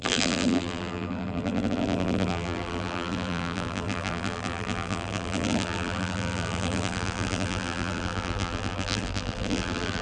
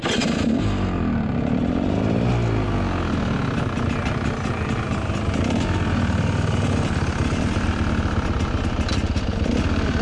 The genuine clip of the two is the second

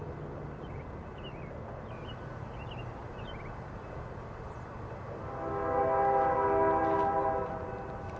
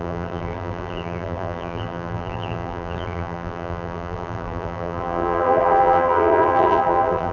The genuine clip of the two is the first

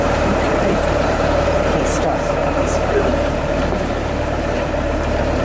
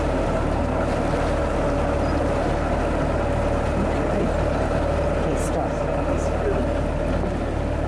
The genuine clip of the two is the second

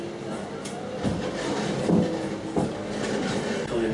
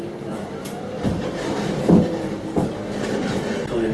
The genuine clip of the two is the first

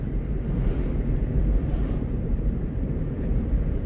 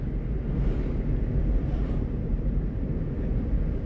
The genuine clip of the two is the second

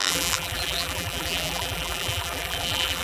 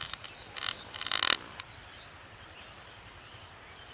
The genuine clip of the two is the second